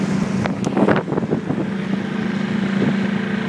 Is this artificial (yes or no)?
no